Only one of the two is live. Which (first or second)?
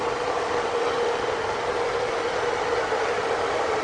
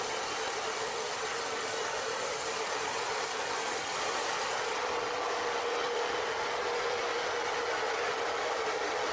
second